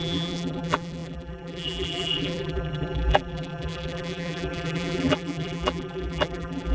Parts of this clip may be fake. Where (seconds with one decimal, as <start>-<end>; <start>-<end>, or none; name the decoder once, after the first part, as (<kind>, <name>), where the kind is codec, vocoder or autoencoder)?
0.0-6.7 (vocoder, BigVGAN v2)